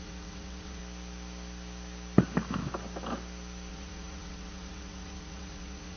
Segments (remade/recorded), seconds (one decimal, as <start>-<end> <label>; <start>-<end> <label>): 0.0-0.8 remade; 0.8-3.7 recorded; 3.7-6.0 remade